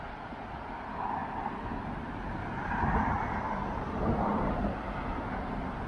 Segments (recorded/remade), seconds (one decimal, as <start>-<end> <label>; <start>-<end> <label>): 0.0-1.2 recorded; 1.2-4.7 remade; 4.7-5.9 recorded